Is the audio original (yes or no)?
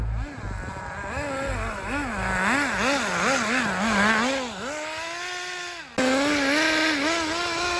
yes